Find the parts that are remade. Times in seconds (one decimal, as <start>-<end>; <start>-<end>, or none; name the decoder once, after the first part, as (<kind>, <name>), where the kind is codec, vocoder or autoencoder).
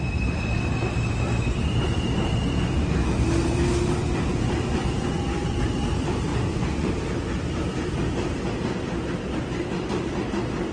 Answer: 6.3-6.9 (vocoder, Vocos)